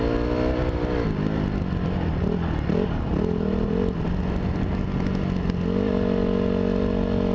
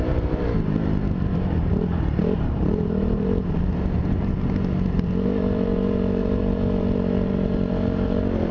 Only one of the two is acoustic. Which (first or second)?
first